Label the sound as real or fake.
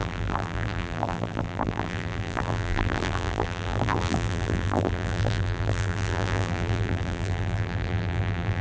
fake